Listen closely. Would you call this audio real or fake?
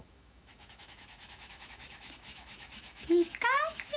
fake